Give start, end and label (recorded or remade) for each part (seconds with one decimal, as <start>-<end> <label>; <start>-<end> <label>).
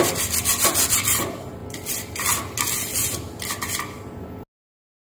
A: 0.0-5.0 recorded